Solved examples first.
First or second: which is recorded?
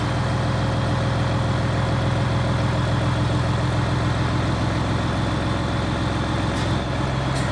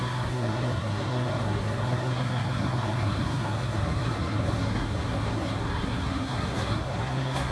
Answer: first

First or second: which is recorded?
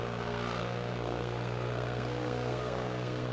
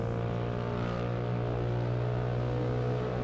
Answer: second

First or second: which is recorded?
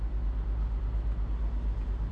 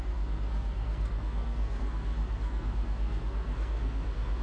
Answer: first